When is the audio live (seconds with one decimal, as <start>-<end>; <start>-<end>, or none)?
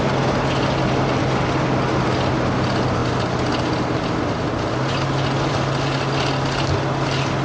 0.0-7.4